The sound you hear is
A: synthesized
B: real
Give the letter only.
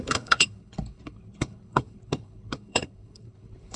A